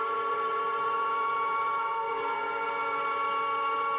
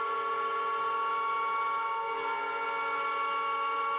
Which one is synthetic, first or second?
first